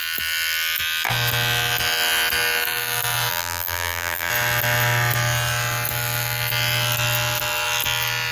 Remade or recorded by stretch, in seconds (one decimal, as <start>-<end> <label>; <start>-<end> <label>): 0.0-3.3 recorded; 3.3-4.3 remade; 4.3-8.3 recorded